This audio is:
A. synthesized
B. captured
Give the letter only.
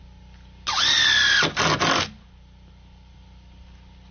B